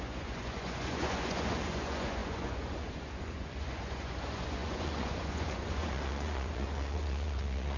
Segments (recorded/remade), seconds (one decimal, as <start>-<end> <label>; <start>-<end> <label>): 0.0-7.8 remade